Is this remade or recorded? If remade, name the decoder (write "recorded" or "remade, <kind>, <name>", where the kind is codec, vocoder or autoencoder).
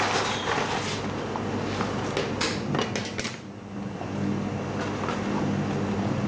recorded